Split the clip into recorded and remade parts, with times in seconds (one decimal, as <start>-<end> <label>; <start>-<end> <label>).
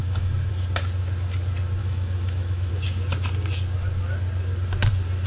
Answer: 0.0-0.5 remade; 0.5-1.8 recorded; 1.8-2.7 remade; 2.7-5.3 recorded